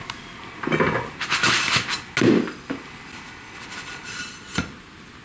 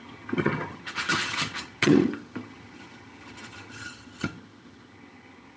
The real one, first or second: first